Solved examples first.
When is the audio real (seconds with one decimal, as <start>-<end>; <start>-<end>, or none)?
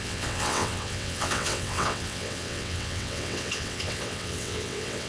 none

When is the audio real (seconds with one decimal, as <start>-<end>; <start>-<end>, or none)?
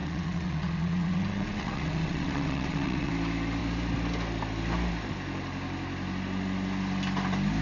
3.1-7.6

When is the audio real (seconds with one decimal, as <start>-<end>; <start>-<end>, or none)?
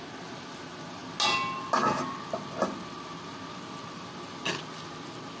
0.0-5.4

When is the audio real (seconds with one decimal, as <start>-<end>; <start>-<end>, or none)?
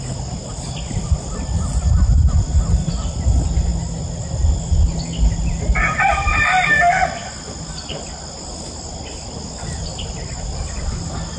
0.0-11.4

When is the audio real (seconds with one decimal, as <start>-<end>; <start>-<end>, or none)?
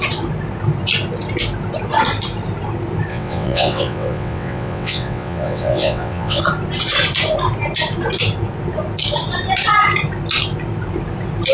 0.0-3.1; 6.4-11.5